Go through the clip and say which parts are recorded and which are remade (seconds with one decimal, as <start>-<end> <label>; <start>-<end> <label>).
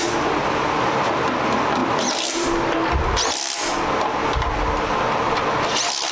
0.0-6.1 recorded